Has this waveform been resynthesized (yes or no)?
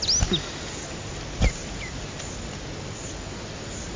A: no